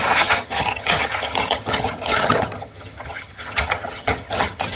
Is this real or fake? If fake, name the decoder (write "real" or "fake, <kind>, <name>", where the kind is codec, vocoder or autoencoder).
fake, vocoder, HiFi-GAN